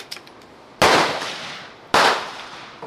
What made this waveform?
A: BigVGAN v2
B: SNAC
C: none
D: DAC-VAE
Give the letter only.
C